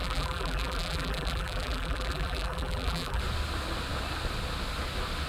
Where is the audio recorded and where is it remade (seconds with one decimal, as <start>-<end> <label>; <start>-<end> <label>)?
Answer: 0.0-3.2 remade; 3.2-5.3 recorded